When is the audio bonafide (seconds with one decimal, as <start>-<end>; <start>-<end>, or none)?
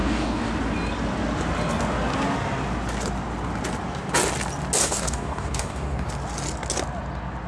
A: 0.5-4.8; 6.1-7.5